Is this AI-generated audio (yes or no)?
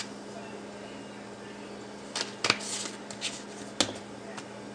no